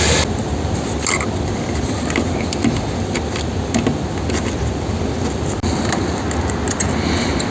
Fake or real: real